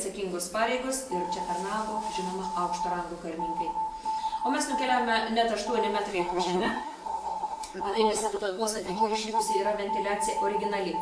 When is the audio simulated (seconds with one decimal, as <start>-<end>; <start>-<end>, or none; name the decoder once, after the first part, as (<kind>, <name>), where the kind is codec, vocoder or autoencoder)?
6.1-9.4 (codec, SNAC)